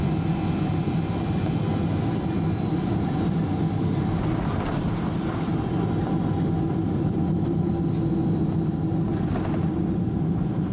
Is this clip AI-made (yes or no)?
no